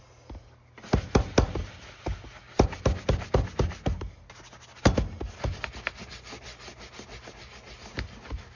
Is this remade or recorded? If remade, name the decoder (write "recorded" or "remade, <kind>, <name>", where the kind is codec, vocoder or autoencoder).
recorded